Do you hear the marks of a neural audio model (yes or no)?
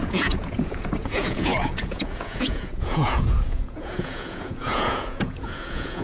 yes